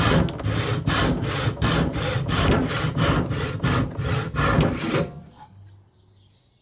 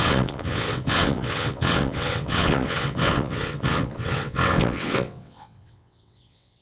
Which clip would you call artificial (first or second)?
second